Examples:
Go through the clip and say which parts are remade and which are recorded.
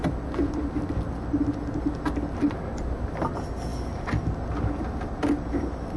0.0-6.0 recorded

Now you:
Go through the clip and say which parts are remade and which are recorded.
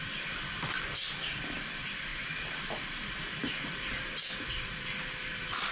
0.0-2.1 remade; 2.1-5.7 recorded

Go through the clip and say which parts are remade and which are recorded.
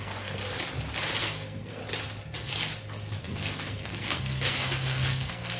0.0-0.4 remade; 0.4-1.2 recorded; 1.2-1.8 remade; 1.8-3.2 recorded; 3.2-5.6 remade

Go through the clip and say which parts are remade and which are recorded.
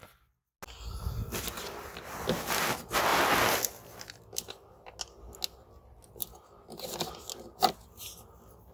0.0-8.7 recorded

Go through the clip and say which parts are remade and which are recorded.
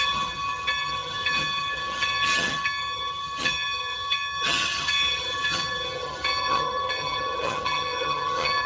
0.0-8.7 remade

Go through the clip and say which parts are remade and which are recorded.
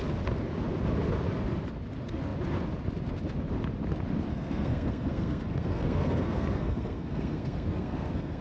0.0-4.3 recorded; 4.3-8.4 remade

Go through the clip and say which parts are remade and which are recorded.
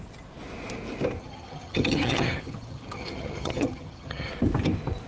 0.0-1.2 recorded; 1.2-4.3 remade; 4.3-5.1 recorded